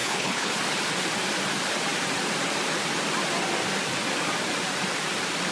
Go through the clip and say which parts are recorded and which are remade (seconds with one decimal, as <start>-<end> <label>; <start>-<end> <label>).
0.0-0.5 remade; 0.5-5.5 recorded